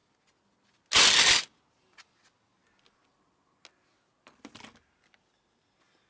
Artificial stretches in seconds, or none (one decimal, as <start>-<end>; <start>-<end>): none